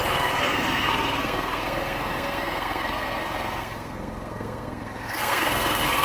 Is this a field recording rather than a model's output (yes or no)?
no